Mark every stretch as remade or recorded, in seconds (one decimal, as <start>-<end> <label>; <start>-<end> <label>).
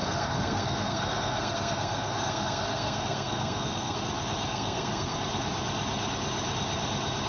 0.0-4.0 remade; 4.0-4.5 recorded; 4.5-5.2 remade; 5.2-7.3 recorded